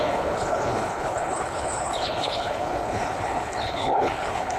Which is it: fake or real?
fake